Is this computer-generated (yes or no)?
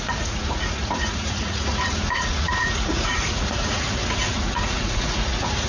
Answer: yes